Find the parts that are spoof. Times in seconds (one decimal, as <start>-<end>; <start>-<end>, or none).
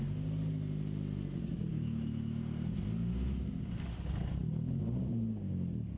1.7-2.4